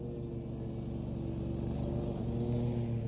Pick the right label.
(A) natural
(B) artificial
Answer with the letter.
A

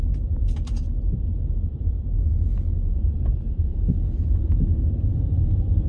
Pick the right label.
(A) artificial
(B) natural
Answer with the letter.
A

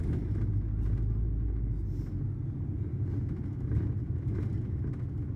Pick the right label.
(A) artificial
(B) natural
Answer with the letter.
B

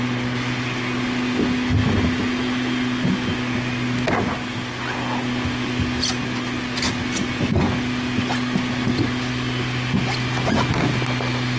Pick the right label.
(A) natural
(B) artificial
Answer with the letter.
A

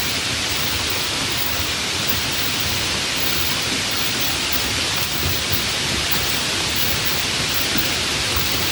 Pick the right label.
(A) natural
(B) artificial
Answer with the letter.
B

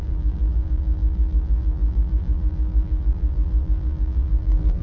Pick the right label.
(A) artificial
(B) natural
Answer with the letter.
A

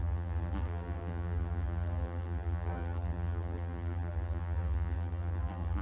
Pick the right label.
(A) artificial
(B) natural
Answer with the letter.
A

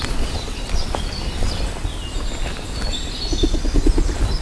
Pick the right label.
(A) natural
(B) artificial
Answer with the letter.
A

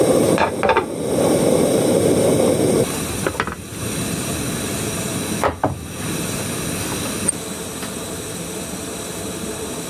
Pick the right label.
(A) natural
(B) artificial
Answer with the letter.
A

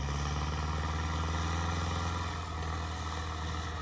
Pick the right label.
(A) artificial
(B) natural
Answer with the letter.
B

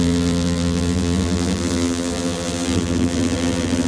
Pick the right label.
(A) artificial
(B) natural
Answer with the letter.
A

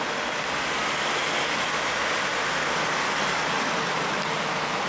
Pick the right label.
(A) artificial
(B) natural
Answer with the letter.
B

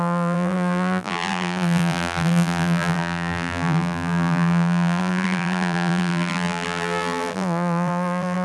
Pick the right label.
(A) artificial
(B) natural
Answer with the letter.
A